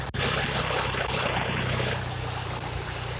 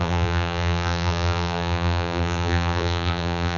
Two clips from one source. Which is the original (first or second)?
first